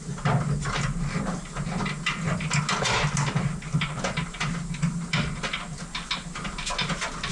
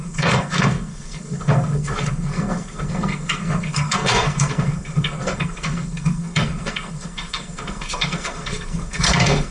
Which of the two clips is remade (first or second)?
second